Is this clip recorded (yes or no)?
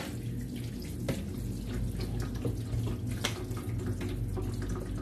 yes